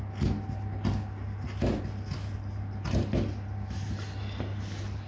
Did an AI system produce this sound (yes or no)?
no